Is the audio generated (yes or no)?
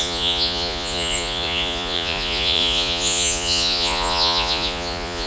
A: yes